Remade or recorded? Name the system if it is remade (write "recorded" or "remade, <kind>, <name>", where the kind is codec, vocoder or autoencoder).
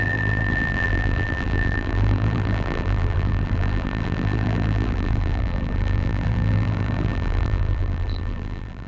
remade, vocoder, BigVGAN v2